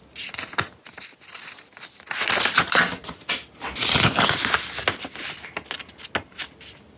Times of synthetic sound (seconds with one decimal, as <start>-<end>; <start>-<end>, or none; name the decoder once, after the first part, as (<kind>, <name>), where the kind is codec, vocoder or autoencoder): none